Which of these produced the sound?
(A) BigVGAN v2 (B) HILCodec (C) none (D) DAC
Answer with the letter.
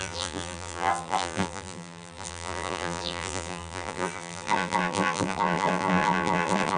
A